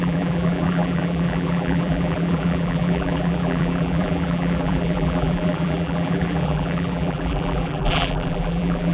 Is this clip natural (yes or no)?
no